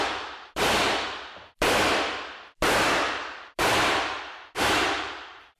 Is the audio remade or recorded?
remade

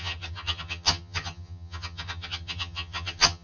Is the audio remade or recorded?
remade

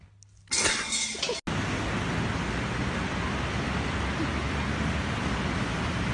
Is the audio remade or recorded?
recorded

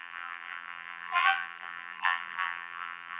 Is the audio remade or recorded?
remade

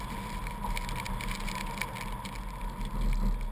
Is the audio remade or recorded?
recorded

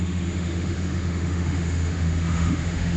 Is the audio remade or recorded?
remade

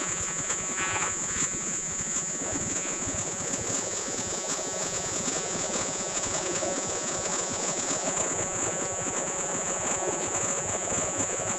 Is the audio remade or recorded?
remade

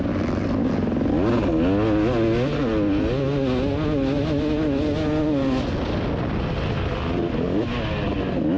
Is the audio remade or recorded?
recorded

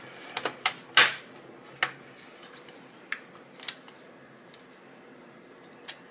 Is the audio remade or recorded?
recorded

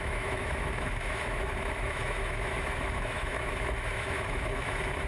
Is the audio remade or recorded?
remade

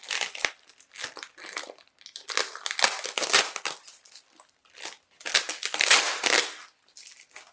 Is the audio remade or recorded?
recorded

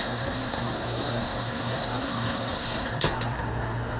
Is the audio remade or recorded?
remade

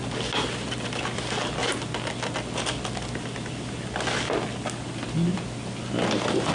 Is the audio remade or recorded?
recorded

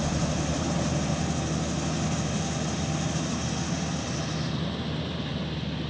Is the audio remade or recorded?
recorded